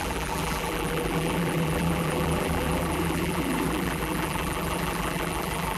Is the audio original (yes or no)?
no